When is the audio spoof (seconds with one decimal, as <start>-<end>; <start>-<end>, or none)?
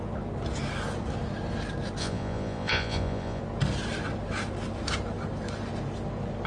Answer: 2.0-3.4